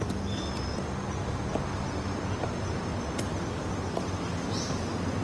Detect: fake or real real